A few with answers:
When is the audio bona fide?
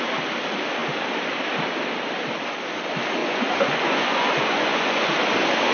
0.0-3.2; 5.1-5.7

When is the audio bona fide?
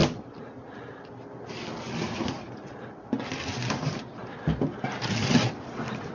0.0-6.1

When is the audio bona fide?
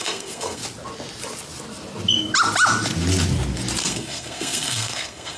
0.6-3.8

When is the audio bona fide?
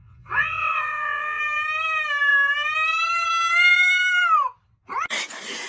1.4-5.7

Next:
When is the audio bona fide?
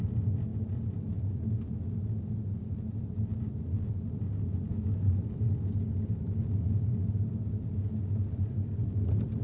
0.0-4.7; 5.4-9.4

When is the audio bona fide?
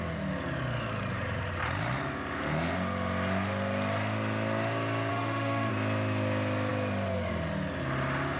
0.0-5.1; 5.7-8.4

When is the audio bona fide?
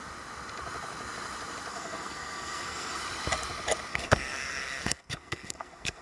0.0-1.7; 3.0-3.9